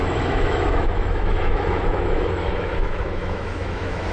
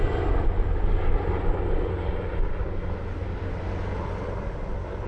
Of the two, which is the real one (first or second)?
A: second